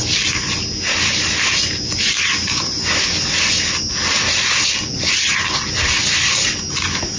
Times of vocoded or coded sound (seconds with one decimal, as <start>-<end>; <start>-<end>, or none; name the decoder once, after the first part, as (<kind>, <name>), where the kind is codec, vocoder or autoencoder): none